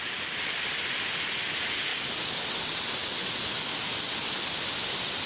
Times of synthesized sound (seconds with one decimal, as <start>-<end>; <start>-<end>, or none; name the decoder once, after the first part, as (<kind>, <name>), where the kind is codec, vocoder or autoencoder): none